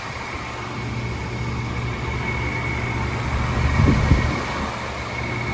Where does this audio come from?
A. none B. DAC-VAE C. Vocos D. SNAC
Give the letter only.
A